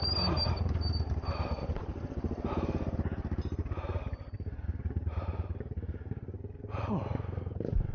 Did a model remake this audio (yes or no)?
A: no